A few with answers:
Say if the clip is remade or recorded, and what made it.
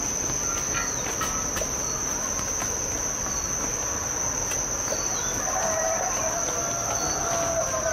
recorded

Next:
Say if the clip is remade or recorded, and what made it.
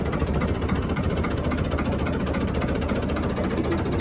remade, vocoder, BigVGAN v2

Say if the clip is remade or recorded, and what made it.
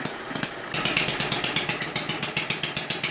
remade, vocoder, BigVGAN v2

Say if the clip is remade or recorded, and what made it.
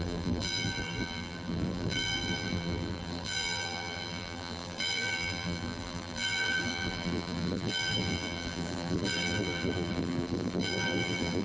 remade, vocoder, BigVGAN v2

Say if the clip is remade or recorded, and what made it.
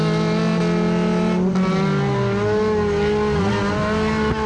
recorded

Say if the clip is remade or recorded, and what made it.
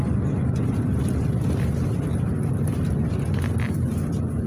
recorded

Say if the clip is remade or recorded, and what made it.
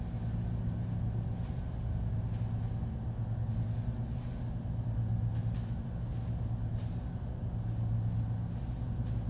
recorded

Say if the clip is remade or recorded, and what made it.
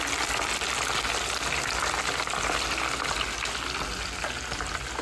recorded